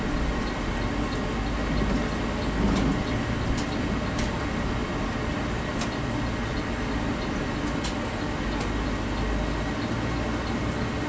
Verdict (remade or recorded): recorded